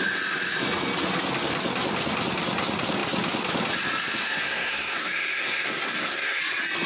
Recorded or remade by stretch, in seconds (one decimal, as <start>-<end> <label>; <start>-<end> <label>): 0.0-4.2 recorded; 4.2-6.4 remade; 6.4-6.9 recorded